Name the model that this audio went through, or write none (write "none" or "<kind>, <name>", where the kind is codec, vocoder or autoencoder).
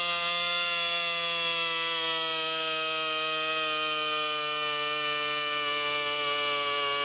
none